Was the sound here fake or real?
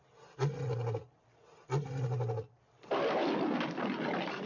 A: real